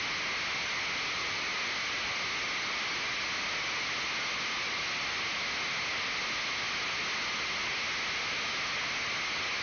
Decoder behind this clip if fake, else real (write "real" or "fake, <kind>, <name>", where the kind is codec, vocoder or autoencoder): real